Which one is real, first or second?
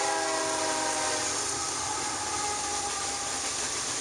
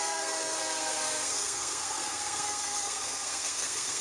first